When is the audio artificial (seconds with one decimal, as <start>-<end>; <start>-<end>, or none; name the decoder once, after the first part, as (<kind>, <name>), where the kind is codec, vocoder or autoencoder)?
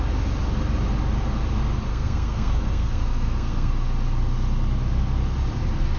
1.9-3.7 (codec, SNAC)